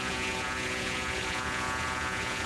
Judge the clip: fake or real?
fake